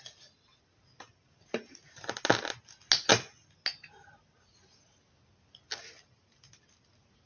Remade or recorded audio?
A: recorded